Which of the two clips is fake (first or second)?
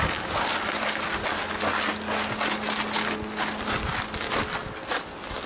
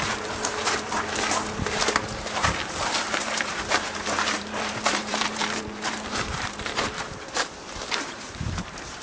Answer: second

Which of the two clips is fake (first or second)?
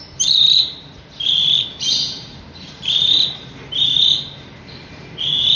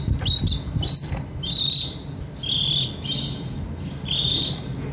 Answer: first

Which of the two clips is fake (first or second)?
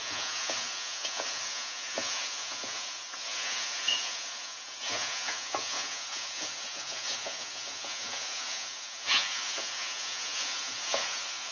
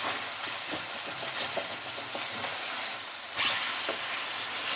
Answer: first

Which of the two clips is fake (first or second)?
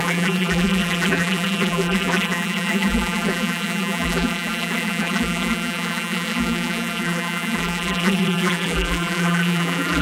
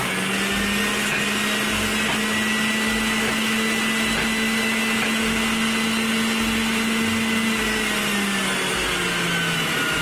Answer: first